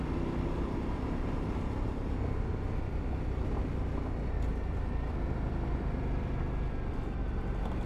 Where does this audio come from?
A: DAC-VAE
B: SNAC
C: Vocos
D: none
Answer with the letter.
D